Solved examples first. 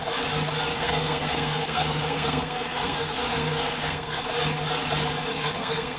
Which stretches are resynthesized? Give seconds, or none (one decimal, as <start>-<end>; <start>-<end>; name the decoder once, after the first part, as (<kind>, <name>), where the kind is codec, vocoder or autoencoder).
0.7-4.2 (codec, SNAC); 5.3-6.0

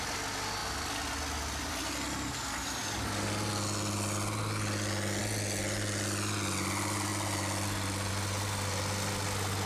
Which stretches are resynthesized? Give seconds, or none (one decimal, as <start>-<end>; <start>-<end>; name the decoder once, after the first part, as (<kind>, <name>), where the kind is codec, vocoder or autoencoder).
none

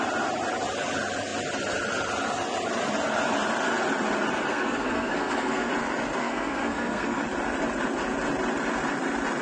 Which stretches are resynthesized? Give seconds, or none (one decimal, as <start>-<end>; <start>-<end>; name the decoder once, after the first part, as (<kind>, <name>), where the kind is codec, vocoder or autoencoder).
4.5-5.7 (codec, SNAC); 6.2-7.2

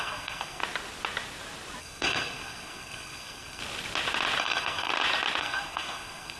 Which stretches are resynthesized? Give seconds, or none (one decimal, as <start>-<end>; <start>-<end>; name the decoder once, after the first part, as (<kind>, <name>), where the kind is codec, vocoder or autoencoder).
0.0-0.6 (codec, SNAC); 1.8-3.6; 4.4-4.9; 5.4-6.4

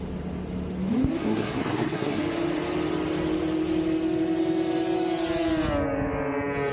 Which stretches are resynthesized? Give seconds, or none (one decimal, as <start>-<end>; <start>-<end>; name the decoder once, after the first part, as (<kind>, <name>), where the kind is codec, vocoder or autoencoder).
1.2-2.2 (codec, SNAC)